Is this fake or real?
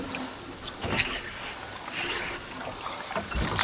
real